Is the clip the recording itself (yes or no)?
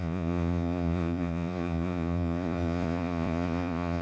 no